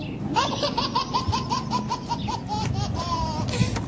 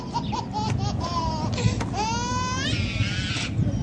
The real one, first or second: second